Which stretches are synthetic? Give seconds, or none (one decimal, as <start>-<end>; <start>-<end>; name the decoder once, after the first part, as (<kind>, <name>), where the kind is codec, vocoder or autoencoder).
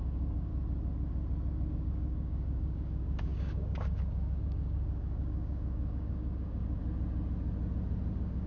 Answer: 0.0-0.5 (codec, DAC); 1.7-6.8; 8.1-8.5